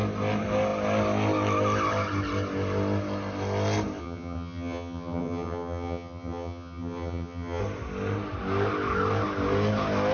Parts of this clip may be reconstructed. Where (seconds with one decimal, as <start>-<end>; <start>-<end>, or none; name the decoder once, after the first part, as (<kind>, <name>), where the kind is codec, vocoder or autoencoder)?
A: 4.0-7.6 (vocoder, HiFi-GAN)